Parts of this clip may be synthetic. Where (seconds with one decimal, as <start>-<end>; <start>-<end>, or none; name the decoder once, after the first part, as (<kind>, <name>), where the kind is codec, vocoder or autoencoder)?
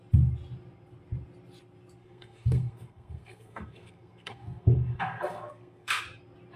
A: 2.0-6.0 (codec, SNAC)